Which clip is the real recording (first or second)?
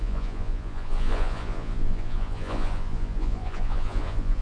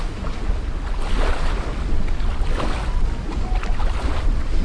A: second